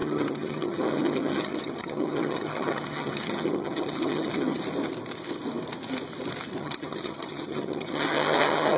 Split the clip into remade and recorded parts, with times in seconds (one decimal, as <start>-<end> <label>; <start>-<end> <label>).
0.0-4.6 remade; 4.6-6.6 recorded; 6.6-8.8 remade